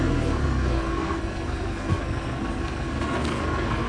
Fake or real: fake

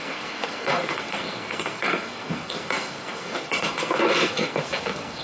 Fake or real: fake